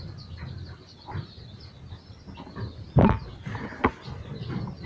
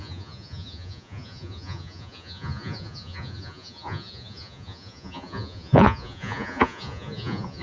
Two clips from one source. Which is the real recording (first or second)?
first